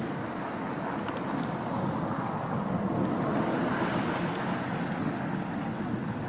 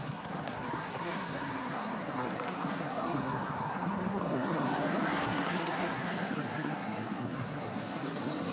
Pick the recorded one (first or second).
first